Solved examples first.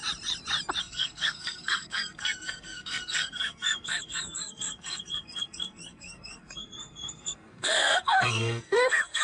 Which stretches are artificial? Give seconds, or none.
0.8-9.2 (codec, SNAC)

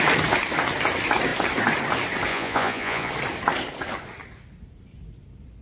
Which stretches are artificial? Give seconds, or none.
2.3-3.1 (vocoder, Vocos)

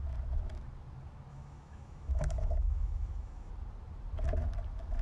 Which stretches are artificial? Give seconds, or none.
1.3-3.5 (autoencoder, DAC-VAE)